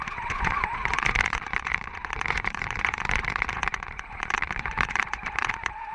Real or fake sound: fake